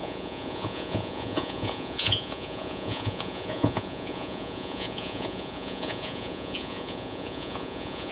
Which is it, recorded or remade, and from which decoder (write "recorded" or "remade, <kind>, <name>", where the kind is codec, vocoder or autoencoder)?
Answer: remade, vocoder, Vocos